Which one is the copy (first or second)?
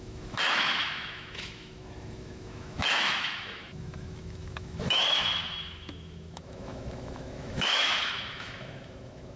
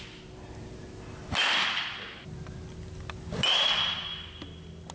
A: first